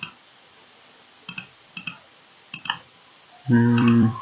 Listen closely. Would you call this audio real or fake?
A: fake